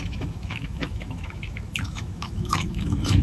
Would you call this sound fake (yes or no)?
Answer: yes